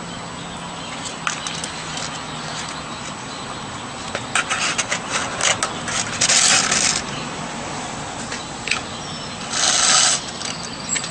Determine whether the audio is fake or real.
real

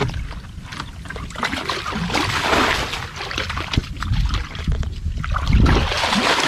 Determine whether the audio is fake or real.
real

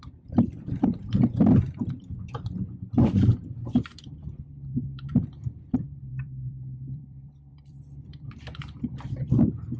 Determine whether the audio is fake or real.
fake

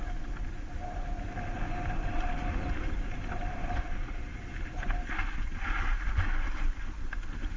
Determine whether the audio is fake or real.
real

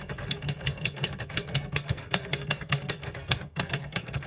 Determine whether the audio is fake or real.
fake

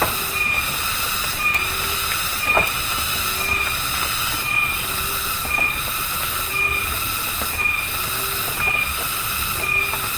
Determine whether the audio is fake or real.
real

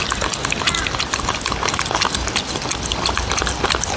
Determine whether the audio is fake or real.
real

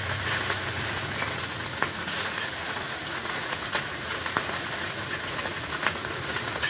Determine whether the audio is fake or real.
fake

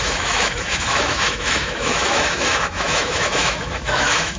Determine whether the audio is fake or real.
fake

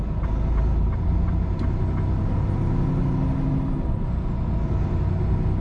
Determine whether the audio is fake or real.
real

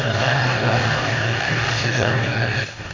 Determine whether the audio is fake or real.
fake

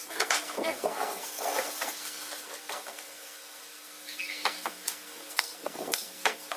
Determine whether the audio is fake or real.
fake